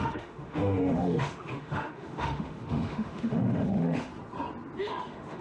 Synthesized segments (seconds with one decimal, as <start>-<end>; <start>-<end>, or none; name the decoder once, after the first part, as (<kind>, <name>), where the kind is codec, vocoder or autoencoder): 0.0-4.1 (autoencoder, DAC-VAE); 4.8-5.4